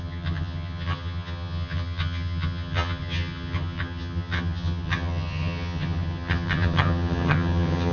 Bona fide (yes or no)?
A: no